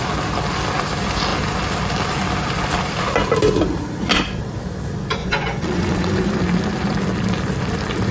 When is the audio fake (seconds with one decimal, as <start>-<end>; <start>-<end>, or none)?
5.2-6.3